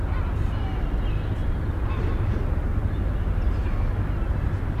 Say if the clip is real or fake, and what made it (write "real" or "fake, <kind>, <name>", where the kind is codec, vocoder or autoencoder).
real